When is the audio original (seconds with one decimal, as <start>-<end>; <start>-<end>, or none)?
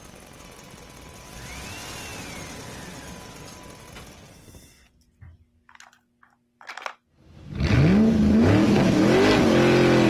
0.0-10.1